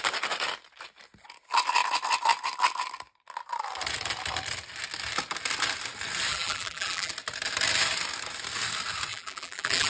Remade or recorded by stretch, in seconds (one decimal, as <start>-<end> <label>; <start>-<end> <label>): 0.0-6.3 recorded; 6.3-7.1 remade; 7.1-9.1 recorded; 9.1-9.9 remade